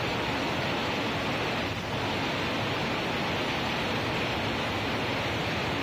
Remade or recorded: recorded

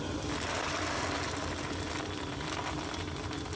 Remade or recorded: recorded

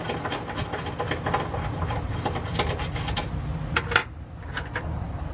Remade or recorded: recorded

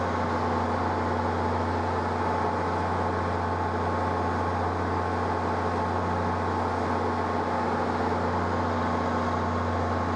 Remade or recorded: recorded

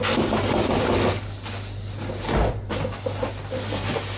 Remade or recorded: recorded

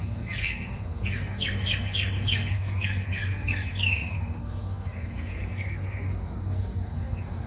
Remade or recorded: remade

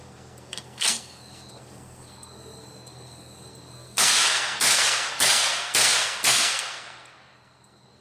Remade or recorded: remade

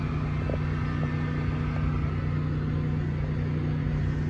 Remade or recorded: recorded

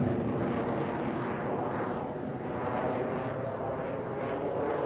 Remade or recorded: recorded